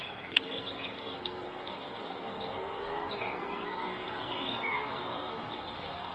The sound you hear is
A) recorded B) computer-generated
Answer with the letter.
B